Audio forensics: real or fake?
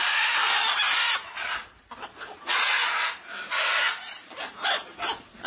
real